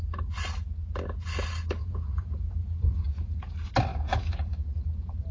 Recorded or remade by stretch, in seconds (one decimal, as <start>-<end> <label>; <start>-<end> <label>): 0.0-1.8 recorded; 1.8-3.5 remade; 3.5-3.9 recorded; 3.9-5.3 remade